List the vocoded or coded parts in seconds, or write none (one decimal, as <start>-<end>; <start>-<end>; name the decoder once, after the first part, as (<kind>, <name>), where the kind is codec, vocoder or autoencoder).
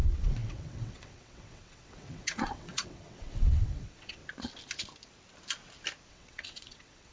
0.0-4.2 (vocoder, WaveNeXt); 6.1-7.1